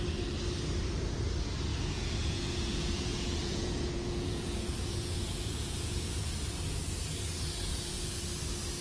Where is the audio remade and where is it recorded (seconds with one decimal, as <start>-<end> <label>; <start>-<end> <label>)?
0.0-1.7 recorded; 1.7-6.3 remade; 6.3-7.6 recorded; 7.6-8.2 remade; 8.2-8.8 recorded